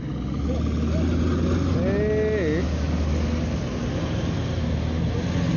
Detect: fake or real real